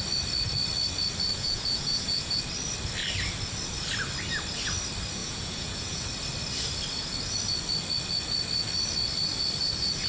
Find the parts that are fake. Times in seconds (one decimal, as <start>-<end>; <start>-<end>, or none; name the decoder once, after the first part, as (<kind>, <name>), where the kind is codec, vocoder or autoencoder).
1.3-2.4 (vocoder, Vocos); 5.2-6.1